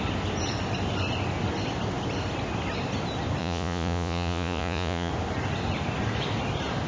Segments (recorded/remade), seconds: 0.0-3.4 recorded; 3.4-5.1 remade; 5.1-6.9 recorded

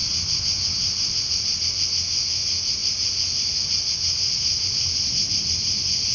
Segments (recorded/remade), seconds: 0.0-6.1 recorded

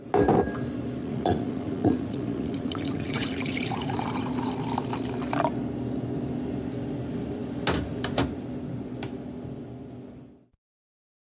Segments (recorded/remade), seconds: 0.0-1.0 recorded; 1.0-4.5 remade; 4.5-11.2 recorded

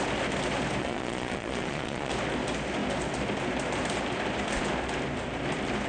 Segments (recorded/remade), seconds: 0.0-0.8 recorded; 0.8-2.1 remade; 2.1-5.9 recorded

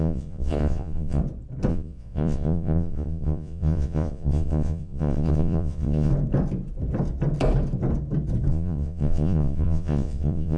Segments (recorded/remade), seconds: 0.0-1.2 remade; 1.2-1.7 recorded; 1.7-6.1 remade; 6.1-8.5 recorded; 8.5-10.6 remade

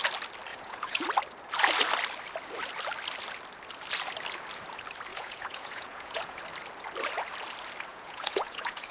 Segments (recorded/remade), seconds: 0.0-0.5 recorded; 0.5-1.0 remade; 1.0-5.1 recorded; 5.1-6.4 remade; 6.4-7.9 recorded; 7.9-8.9 remade